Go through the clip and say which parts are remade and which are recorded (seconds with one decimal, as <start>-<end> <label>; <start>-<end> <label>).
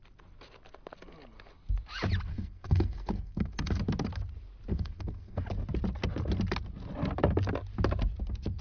0.0-2.3 recorded; 2.3-3.8 remade; 3.8-4.7 recorded; 4.7-5.4 remade; 5.4-8.6 recorded